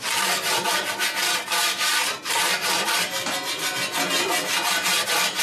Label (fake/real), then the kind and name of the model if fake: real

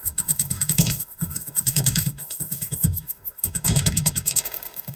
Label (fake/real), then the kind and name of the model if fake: fake, autoencoder, DAC-VAE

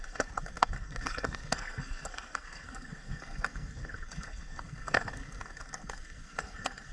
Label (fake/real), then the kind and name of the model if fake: fake, codec, SNAC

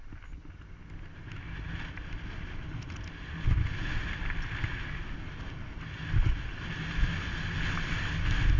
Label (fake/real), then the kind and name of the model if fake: real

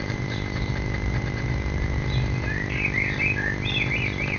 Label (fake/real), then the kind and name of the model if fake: fake, vocoder, BigVGAN v2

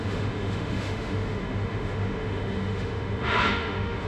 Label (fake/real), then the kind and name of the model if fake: fake, autoencoder, DAC-VAE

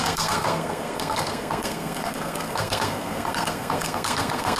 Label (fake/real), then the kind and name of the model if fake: fake, codec, SNAC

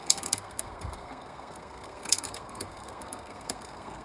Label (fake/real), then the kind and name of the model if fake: fake, codec, SNAC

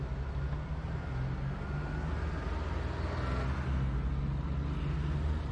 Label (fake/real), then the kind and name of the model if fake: real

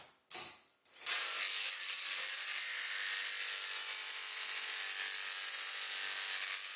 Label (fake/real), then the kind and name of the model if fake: real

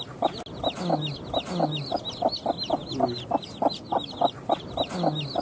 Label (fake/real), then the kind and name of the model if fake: real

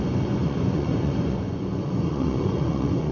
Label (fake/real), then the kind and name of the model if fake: fake, vocoder, Vocos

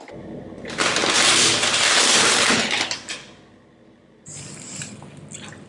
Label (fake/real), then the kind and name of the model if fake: real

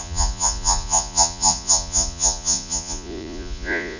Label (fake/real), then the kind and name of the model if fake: fake, vocoder, Vocos